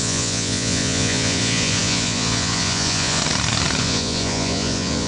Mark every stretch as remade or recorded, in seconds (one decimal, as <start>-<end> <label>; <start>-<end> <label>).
0.0-3.2 remade; 3.2-3.8 recorded; 3.8-5.1 remade